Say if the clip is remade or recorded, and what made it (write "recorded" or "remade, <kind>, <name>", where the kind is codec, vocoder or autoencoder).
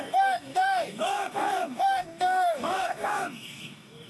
remade, codec, DAC